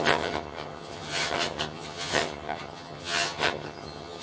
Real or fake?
fake